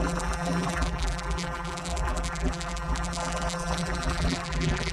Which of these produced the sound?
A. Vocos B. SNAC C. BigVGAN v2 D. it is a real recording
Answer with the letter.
C